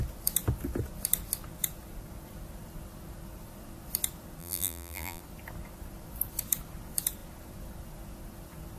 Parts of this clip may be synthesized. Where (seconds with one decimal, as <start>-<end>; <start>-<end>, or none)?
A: 4.4-5.2